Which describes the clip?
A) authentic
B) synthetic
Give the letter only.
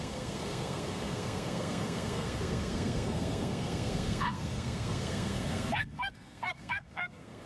B